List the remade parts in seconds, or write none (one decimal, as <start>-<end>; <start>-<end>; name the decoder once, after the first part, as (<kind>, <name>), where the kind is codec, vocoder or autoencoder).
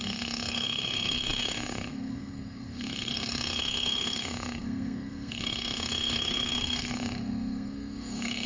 0.0-8.5 (codec, SNAC)